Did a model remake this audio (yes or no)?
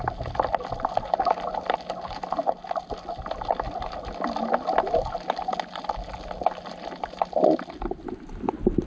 no